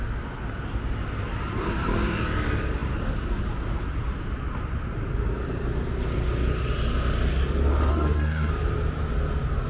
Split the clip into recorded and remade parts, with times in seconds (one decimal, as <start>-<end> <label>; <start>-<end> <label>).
0.0-7.9 recorded; 7.9-8.5 remade; 8.5-9.7 recorded